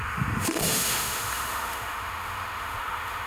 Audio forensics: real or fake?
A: fake